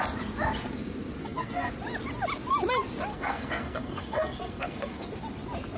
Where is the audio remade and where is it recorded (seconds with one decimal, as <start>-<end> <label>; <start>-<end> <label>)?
0.0-1.2 recorded; 1.2-1.7 remade; 1.7-3.1 recorded; 3.1-5.1 remade; 5.1-5.8 recorded